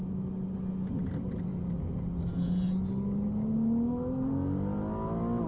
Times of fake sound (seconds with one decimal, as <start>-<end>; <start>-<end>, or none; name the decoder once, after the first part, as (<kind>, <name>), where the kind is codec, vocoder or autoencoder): none